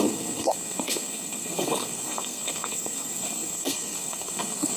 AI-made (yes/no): yes